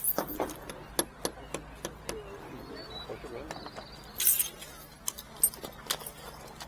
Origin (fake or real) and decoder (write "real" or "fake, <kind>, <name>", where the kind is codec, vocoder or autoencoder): real